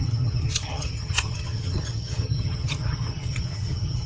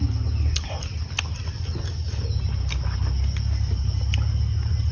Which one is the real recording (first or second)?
second